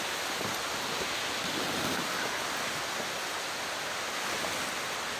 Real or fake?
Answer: real